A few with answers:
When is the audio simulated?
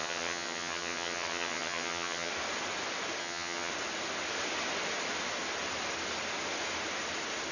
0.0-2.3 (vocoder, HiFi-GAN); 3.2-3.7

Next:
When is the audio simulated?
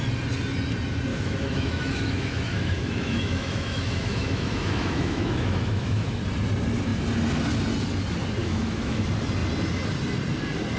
1.1-6.2 (autoencoder, DAC-VAE); 8.4-9.0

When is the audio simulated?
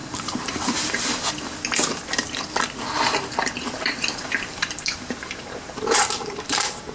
0.0-1.3 (vocoder, BigVGAN v2); 3.6-6.9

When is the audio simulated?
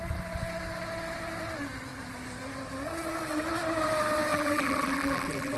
4.3-5.6 (vocoder, BigVGAN v2)